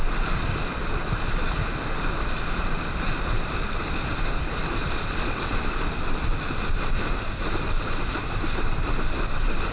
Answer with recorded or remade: recorded